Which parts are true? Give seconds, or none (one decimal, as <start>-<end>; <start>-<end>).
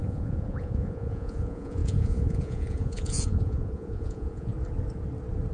4.5-5.5